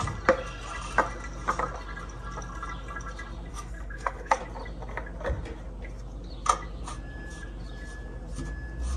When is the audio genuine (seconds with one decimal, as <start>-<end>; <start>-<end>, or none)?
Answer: 0.0-3.5; 4.4-9.0

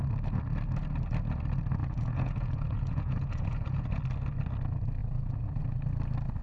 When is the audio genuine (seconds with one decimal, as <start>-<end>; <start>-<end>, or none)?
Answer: 0.0-1.8; 4.0-5.0; 5.6-6.4

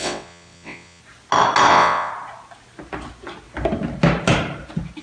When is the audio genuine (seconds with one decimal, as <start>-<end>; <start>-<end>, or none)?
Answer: 1.0-1.7; 2.1-5.0

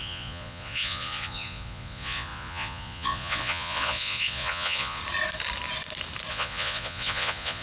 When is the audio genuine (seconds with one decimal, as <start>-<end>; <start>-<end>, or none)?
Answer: 5.0-6.3

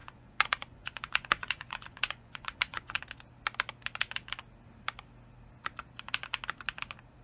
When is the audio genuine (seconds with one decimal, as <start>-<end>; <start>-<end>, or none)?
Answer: 3.0-7.2

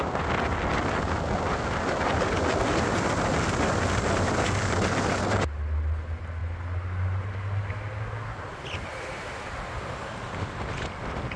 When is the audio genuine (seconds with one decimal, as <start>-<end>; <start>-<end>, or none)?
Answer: 0.0-11.4